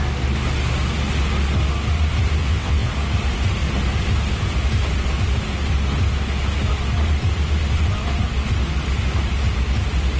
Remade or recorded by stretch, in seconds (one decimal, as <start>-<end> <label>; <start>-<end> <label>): 0.0-2.4 recorded; 2.4-2.9 remade; 2.9-10.2 recorded

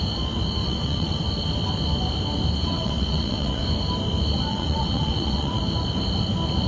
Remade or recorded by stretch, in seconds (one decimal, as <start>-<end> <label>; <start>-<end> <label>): 0.0-0.6 recorded; 0.6-1.2 remade; 1.2-2.6 recorded; 2.6-3.6 remade; 3.6-4.5 recorded; 4.5-5.6 remade; 5.6-6.7 recorded

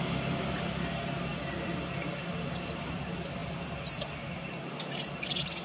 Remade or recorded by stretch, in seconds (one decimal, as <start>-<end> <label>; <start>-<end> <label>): 0.0-5.6 recorded

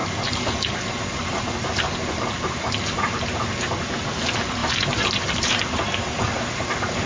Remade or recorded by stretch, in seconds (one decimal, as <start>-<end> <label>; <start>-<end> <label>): 0.0-7.1 recorded

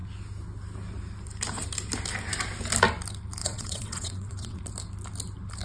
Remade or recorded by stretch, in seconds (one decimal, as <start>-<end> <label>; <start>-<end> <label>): 0.0-3.4 recorded; 3.4-4.6 remade; 4.6-5.6 recorded

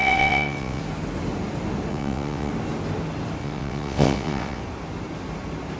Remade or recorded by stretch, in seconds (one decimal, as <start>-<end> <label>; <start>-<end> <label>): 0.0-0.8 remade; 0.8-1.9 recorded; 1.9-2.5 remade; 2.5-3.4 recorded; 3.4-4.6 remade; 4.6-5.8 recorded

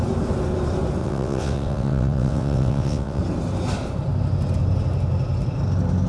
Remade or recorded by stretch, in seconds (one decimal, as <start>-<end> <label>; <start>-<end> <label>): 0.0-1.0 recorded; 1.0-3.2 remade; 3.2-6.1 recorded